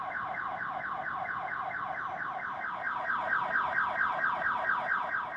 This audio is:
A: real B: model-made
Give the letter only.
A